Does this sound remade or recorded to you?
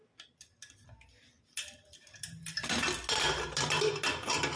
recorded